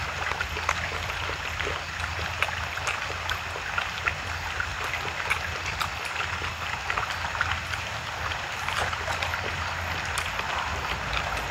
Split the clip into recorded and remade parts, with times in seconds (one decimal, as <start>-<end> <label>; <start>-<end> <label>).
0.0-11.5 recorded